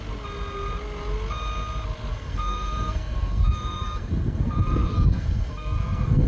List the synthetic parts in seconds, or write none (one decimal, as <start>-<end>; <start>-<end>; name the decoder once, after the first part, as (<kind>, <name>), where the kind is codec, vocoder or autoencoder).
2.1-6.3 (codec, SNAC)